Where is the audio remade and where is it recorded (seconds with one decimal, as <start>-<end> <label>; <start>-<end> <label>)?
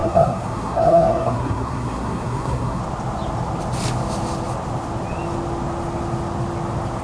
0.0-2.8 remade; 2.8-7.0 recorded